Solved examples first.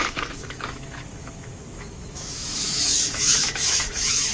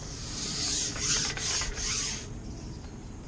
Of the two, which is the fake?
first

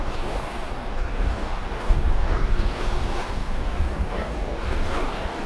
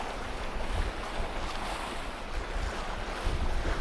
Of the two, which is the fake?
first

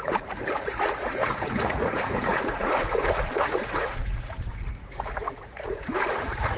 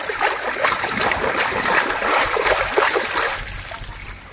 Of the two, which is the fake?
first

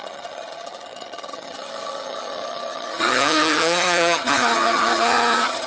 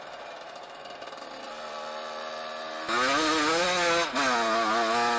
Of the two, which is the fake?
first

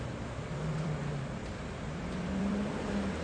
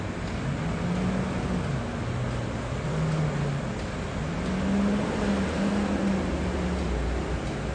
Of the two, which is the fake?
first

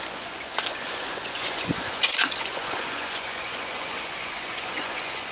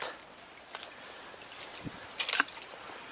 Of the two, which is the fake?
first